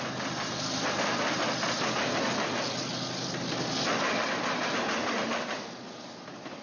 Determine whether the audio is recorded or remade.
recorded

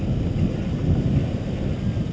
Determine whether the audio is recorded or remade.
recorded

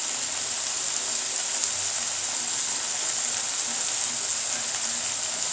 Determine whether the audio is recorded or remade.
recorded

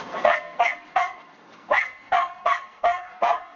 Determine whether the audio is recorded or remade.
remade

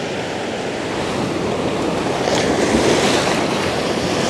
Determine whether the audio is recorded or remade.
recorded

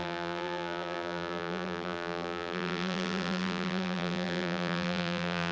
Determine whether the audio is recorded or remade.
remade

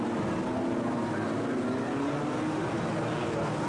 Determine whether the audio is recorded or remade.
recorded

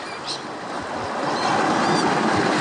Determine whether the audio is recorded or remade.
recorded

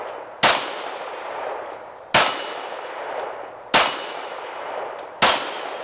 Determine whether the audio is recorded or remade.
recorded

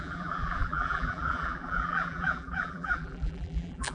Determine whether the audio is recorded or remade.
remade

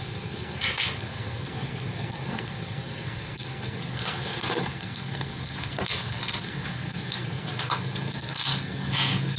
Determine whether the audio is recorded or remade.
remade